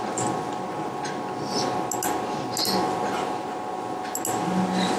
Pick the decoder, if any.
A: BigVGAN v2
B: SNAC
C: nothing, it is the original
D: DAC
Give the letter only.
C